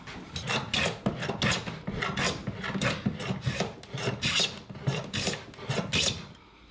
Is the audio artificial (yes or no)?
no